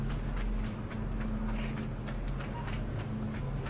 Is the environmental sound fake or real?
real